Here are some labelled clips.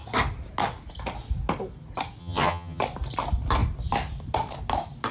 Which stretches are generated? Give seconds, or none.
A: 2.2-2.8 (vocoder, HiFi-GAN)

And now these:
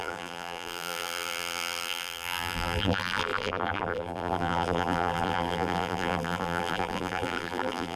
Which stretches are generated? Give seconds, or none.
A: 0.0-8.0 (vocoder, BigVGAN v2)